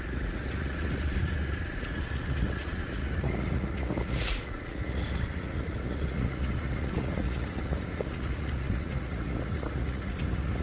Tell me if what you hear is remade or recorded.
remade